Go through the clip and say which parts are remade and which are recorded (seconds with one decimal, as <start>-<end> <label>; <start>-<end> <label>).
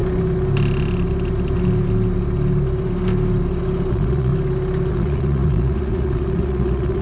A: 0.0-3.9 recorded; 3.9-4.3 remade; 4.3-4.9 recorded; 4.9-7.0 remade